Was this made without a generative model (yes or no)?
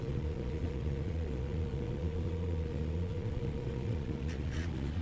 no